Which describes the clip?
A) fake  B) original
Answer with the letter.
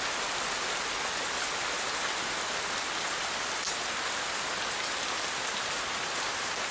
B